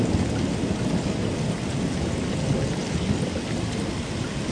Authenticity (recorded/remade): recorded